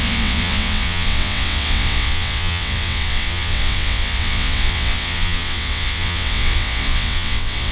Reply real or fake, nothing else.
fake